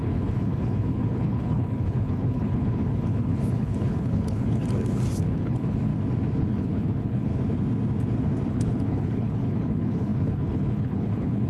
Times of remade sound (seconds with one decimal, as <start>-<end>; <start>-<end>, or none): 0.0-4.6; 5.2-5.9; 6.4-7.3; 8.5-11.5